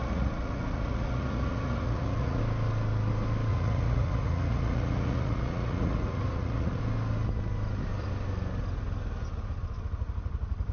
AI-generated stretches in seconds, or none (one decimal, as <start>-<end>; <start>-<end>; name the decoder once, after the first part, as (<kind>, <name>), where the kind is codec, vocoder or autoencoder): 0.0-2.4 (vocoder, Vocos); 3.5-6.8